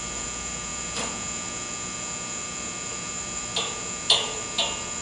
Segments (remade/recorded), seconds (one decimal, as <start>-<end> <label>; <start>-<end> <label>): 0.0-5.0 recorded